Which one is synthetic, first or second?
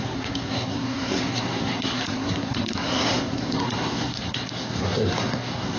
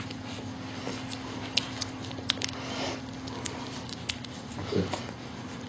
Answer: first